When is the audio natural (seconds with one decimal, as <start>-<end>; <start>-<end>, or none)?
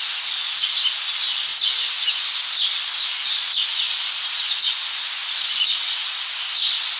0.0-7.0